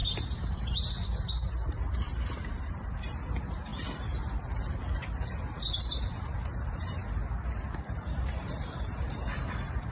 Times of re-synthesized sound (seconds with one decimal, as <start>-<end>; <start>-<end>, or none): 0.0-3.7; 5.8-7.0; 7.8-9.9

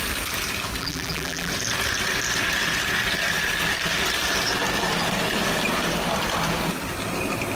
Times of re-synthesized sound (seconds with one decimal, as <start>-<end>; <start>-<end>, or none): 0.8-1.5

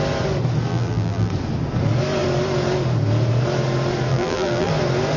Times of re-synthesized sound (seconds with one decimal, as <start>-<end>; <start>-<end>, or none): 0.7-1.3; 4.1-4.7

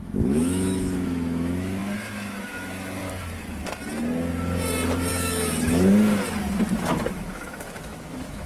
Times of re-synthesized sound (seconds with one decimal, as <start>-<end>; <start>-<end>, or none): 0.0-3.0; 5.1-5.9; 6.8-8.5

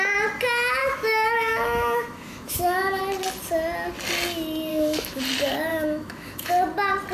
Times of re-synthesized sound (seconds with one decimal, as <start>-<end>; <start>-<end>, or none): 0.8-3.0; 4.7-5.2; 5.7-6.5

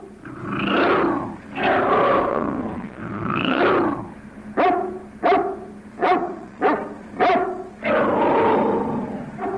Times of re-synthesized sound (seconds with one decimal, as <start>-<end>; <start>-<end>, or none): 2.3-3.6; 6.0-6.6

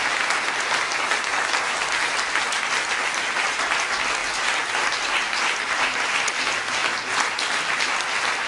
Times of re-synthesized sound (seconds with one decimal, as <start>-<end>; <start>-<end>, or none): none

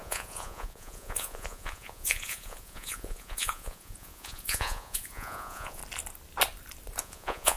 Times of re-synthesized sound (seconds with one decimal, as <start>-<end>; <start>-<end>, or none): 0.0-5.8; 7.0-7.6